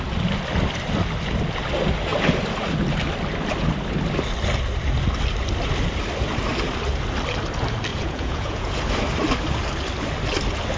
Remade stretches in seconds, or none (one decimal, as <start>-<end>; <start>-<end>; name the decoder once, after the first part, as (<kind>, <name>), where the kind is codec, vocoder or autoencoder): 7.9-8.8 (vocoder, Vocos)